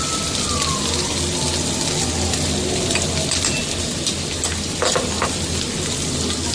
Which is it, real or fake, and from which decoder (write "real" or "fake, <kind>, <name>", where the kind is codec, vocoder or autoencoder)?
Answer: real